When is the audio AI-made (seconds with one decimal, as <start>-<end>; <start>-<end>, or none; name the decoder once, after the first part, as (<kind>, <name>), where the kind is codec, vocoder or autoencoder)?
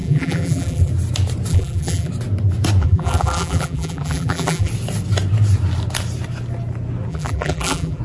0.0-0.9 (vocoder, BigVGAN v2); 1.5-2.1; 2.8-4.7; 7.1-8.0